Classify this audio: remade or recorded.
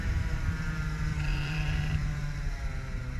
remade